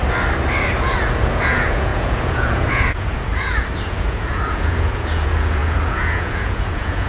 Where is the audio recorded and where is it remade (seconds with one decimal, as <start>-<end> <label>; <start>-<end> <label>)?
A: 0.0-0.8 recorded; 0.8-7.1 remade